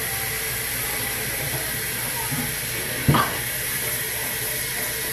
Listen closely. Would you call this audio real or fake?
real